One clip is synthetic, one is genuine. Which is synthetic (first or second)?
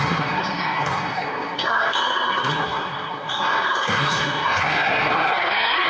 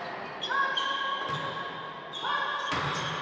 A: first